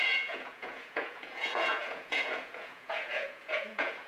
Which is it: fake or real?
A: fake